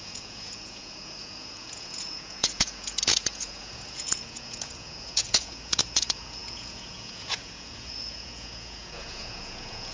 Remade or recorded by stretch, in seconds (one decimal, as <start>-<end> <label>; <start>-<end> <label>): 0.0-9.9 remade